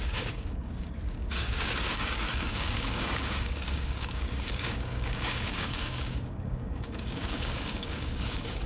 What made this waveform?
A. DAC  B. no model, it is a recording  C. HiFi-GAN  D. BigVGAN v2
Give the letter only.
A